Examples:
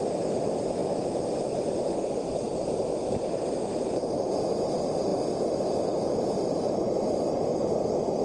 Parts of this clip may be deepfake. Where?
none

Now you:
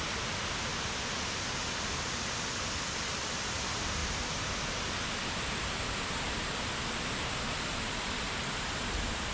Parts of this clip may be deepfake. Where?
none

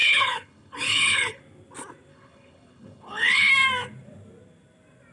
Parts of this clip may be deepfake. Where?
0.0-1.4; 2.1-3.5

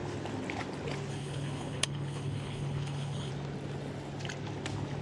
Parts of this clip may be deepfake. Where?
1.1-3.3

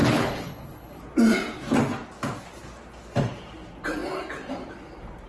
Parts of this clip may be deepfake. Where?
0.0-1.0

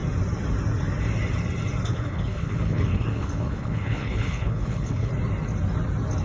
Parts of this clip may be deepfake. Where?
1.9-5.1

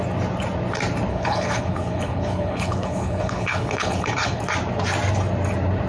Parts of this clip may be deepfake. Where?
1.1-4.4

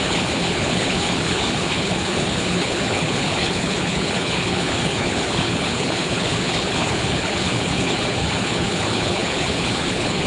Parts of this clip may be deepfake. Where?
0.0-10.3